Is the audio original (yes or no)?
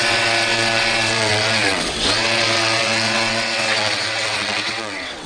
no